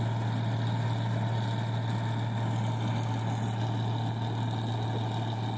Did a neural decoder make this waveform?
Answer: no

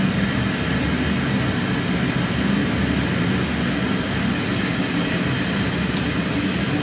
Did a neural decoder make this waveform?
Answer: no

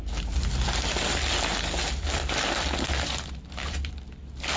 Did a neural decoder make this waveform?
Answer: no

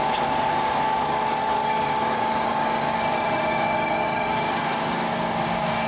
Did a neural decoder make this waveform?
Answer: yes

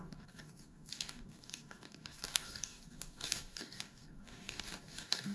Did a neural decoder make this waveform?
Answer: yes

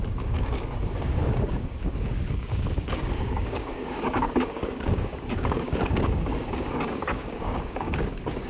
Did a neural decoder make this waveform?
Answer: yes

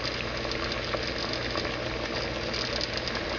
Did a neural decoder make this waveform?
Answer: no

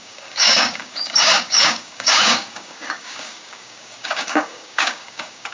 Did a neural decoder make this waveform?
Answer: yes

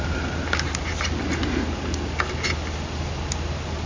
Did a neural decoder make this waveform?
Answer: no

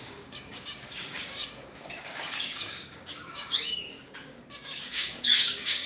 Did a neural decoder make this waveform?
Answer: yes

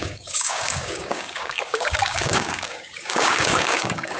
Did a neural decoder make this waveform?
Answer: yes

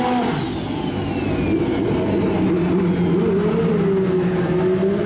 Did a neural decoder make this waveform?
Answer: no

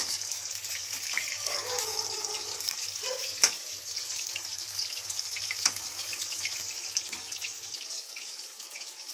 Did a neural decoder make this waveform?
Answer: yes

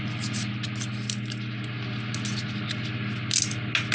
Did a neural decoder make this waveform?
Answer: no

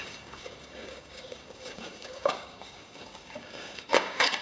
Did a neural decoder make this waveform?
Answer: yes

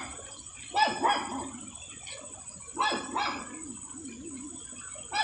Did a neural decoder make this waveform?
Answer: no